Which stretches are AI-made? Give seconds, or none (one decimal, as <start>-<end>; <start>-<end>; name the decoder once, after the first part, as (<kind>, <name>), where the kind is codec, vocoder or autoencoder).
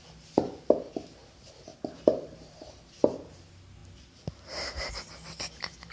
1.7-2.8 (vocoder, BigVGAN v2)